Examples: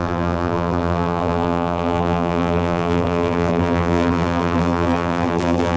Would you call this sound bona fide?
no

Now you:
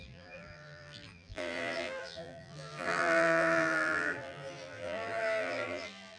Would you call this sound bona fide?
no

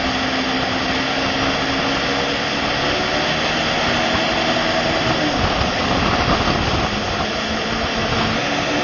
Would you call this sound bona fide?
yes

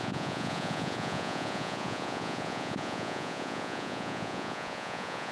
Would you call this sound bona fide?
no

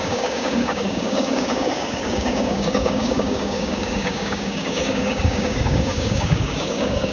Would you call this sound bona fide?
no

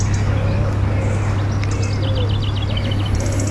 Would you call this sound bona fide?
yes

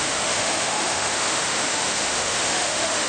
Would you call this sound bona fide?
no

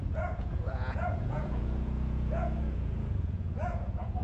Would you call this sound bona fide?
no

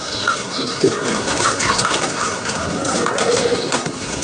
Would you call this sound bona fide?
no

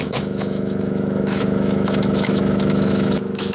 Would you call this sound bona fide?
no